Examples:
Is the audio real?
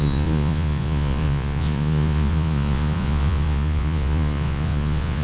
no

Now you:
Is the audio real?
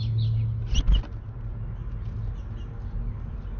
yes